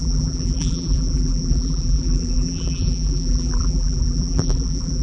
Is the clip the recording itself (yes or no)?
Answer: no